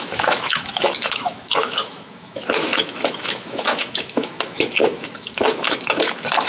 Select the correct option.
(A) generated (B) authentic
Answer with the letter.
A